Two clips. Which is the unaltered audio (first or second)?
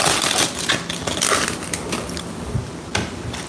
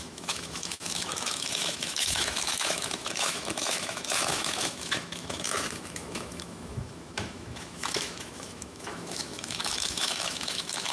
first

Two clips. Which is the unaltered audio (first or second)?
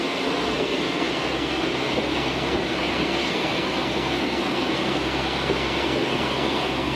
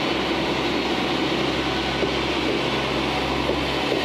second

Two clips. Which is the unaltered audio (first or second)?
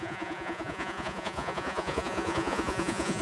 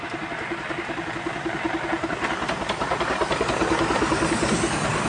second